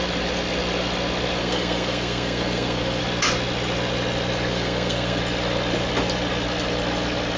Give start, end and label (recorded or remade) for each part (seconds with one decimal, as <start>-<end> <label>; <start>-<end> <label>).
0.0-1.4 recorded; 1.4-3.0 remade; 3.0-4.5 recorded; 4.5-5.2 remade; 5.2-7.4 recorded